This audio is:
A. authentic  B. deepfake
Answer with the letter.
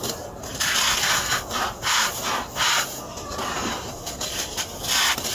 A